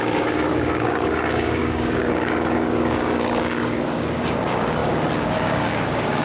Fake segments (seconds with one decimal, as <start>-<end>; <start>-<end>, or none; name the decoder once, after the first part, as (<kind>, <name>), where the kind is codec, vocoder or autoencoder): 0.0-6.2 (codec, DAC)

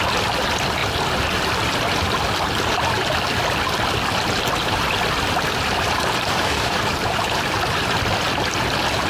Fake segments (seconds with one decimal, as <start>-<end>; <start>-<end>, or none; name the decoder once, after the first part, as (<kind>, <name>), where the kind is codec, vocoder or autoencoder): 6.3-6.8 (codec, DAC)

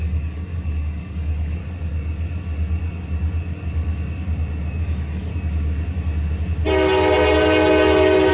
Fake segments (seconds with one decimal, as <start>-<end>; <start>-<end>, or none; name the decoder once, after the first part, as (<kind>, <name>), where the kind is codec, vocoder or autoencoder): 0.0-1.6 (codec, DAC); 4.8-5.3

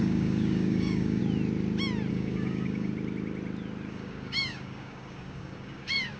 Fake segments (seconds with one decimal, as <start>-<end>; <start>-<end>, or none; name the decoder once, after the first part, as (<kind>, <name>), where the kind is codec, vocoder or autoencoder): 0.0-1.2 (codec, DAC); 2.1-2.9; 3.9-6.2

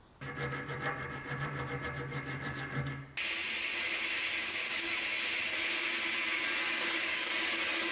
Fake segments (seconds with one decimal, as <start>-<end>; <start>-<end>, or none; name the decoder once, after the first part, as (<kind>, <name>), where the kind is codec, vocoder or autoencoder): 4.4-4.9 (codec, DAC); 6.8-7.3

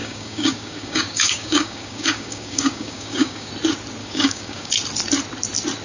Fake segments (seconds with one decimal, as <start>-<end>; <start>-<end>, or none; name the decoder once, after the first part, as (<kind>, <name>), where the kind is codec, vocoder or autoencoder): 0.0-3.5 (codec, DAC); 4.0-4.7

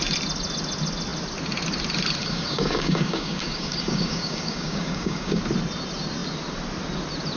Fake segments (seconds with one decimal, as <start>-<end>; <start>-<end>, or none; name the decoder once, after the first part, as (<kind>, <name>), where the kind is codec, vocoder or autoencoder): 2.2-5.4 (codec, DAC)

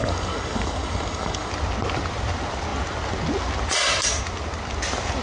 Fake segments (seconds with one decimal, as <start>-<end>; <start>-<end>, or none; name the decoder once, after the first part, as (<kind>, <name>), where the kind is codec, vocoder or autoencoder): 0.0-1.5 (codec, DAC)